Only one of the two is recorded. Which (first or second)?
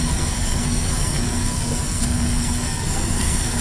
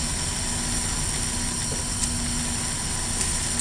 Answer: second